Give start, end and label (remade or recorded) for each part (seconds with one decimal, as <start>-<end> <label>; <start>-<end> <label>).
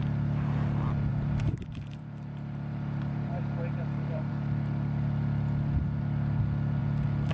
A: 0.0-1.1 recorded; 1.1-4.3 remade; 4.3-7.3 recorded